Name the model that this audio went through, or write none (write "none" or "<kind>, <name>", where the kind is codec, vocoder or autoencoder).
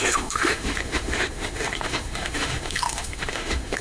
autoencoder, DAC-VAE